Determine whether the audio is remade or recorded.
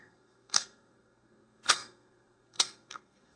remade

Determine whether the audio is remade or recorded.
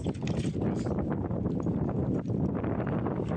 recorded